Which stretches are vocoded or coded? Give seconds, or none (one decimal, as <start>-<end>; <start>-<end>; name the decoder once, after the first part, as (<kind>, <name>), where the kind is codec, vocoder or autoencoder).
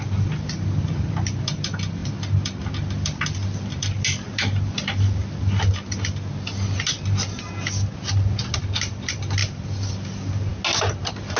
none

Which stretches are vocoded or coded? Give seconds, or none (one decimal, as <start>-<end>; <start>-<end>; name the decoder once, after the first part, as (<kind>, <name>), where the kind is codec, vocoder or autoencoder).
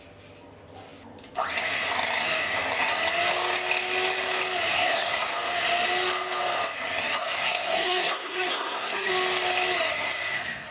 4.7-5.3 (codec, SNAC); 7.2-9.1; 9.9-10.7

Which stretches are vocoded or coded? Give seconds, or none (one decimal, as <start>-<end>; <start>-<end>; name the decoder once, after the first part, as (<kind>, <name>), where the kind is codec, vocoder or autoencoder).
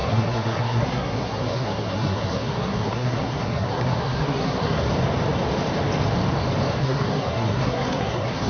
0.0-4.9 (codec, SNAC); 6.8-8.5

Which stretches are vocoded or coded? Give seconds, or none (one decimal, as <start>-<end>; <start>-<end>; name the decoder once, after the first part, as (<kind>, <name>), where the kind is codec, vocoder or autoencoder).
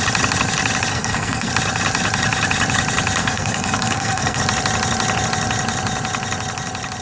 0.9-1.5 (codec, SNAC); 3.2-4.4